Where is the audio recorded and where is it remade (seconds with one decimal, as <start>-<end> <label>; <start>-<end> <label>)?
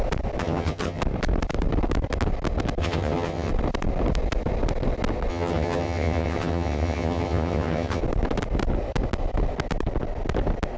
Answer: 0.0-0.4 recorded; 0.4-1.0 remade; 1.0-2.8 recorded; 2.8-3.5 remade; 3.5-5.3 recorded; 5.3-8.0 remade; 8.0-10.8 recorded